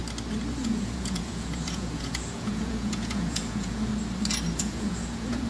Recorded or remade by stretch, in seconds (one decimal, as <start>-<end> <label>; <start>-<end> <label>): 0.0-0.5 recorded; 0.5-3.9 remade; 3.9-4.6 recorded; 4.6-5.5 remade